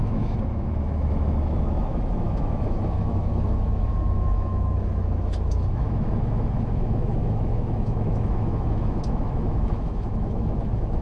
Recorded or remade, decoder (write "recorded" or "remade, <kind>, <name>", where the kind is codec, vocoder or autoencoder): remade, autoencoder, DAC-VAE